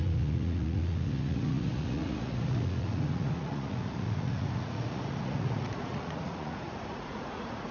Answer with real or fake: fake